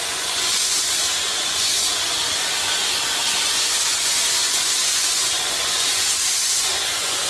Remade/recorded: remade